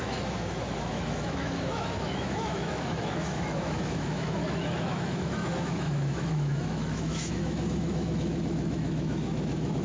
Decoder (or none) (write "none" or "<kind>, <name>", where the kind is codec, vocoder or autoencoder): autoencoder, DAC-VAE